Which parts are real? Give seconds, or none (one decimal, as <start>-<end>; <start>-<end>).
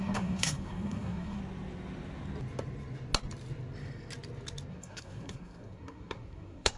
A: 1.4-4.7